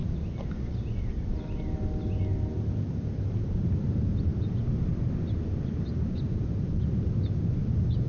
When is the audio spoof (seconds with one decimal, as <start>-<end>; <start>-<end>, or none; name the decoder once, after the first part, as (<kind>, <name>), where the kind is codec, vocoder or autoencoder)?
none